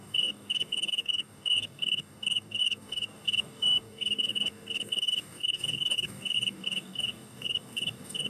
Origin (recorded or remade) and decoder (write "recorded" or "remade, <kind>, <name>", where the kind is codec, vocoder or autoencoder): remade, codec, DAC